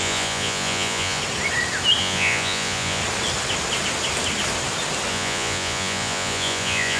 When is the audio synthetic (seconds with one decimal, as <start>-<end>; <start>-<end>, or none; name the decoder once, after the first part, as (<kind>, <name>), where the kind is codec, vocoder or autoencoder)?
0.0-1.2 (vocoder, Vocos); 2.0-3.0; 5.1-7.0